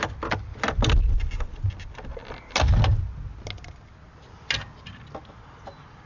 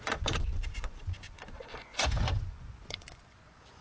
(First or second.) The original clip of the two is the first